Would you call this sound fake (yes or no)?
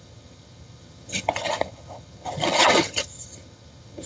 yes